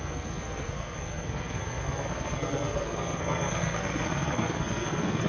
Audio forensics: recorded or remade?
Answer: remade